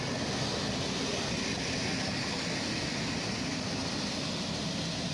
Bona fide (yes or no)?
yes